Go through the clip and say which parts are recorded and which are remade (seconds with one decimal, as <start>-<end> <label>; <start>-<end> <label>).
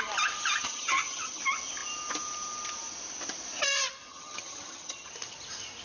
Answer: 0.0-0.6 recorded; 0.6-1.4 remade; 1.4-4.1 recorded; 4.1-5.1 remade; 5.1-5.8 recorded